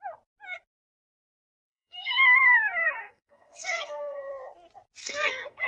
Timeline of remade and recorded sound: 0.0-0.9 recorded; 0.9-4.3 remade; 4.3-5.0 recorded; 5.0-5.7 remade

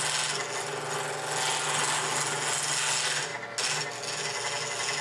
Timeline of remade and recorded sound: 0.0-5.0 recorded

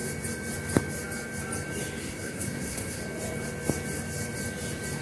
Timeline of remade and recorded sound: 0.0-2.0 recorded; 2.0-3.0 remade; 3.0-5.0 recorded

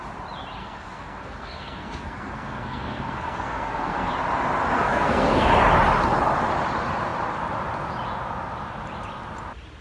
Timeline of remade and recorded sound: 0.0-0.6 recorded; 0.6-4.1 remade; 4.1-4.7 recorded; 4.7-5.5 remade; 5.5-9.8 recorded

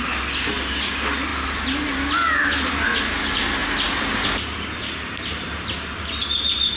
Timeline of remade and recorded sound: 0.0-6.8 recorded

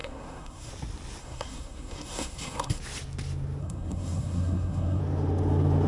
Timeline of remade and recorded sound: 0.0-0.7 remade; 0.7-1.2 recorded; 1.2-2.8 remade; 2.8-3.6 recorded; 3.6-5.0 remade; 5.0-5.9 recorded